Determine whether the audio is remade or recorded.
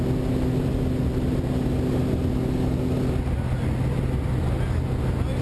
recorded